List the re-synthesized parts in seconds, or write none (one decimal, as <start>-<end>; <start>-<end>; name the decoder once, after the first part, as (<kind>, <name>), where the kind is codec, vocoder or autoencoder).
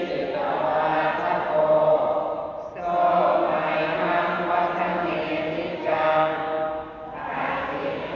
4.9-6.7 (codec, DAC); 7.3-8.2